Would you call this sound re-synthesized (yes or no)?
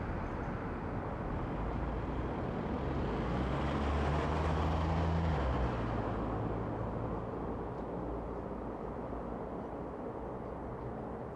no